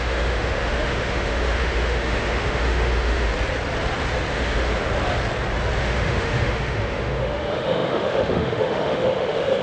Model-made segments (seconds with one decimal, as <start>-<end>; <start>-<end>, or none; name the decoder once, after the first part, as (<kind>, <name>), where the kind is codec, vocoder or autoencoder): 0.0-3.3 (autoencoder, DAC-VAE); 4.3-4.7; 5.8-9.6